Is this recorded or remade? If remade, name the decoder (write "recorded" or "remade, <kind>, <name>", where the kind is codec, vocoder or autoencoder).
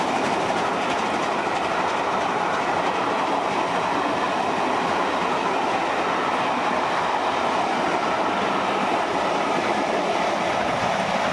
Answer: recorded